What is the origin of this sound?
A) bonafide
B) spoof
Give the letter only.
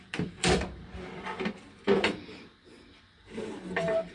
B